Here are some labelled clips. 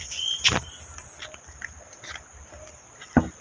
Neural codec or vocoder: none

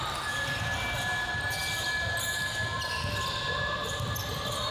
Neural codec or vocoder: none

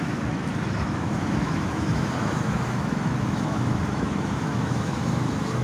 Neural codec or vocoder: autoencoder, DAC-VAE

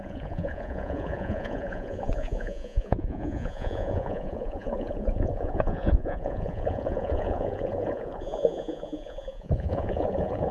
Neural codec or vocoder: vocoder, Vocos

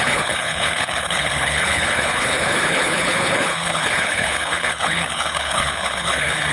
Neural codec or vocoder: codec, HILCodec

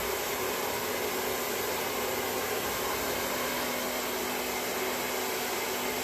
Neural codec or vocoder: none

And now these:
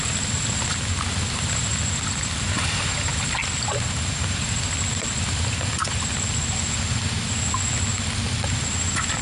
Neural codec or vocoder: none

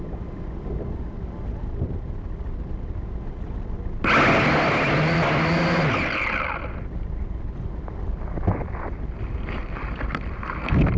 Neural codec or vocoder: none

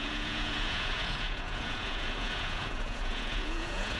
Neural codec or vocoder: vocoder, Vocos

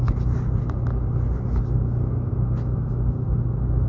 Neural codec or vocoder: none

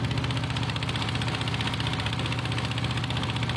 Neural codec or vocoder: none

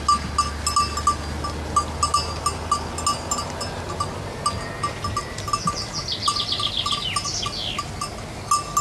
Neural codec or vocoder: none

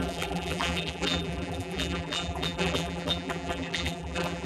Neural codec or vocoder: vocoder, BigVGAN v2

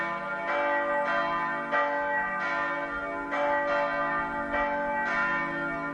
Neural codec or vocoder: none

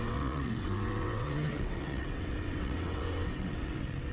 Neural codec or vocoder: vocoder, WaveNeXt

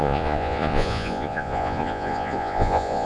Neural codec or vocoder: vocoder, Vocos